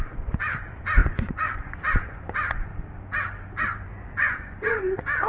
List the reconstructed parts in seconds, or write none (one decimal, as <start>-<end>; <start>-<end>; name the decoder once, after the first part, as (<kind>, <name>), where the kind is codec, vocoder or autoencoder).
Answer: 0.0-2.7 (vocoder, Vocos); 3.8-5.3